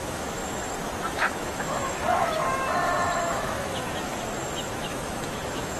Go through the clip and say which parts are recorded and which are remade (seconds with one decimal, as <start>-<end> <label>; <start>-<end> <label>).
0.0-0.4 remade; 0.4-1.0 recorded; 1.0-2.4 remade; 2.4-3.2 recorded; 3.2-4.1 remade; 4.1-4.6 recorded; 4.6-5.8 remade